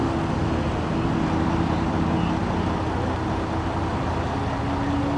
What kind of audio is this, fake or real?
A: real